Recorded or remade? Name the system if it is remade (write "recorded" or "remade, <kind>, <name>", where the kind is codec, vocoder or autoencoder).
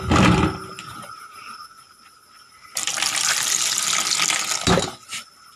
recorded